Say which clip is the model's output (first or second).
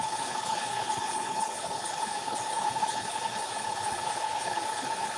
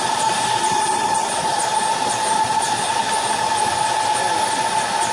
first